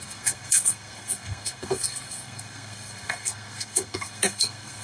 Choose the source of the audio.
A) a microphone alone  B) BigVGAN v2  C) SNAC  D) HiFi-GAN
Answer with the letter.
C